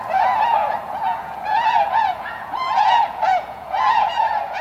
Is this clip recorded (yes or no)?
no